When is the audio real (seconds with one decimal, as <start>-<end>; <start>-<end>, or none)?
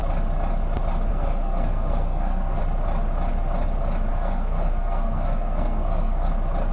0.0-1.1; 2.6-4.1; 6.3-6.7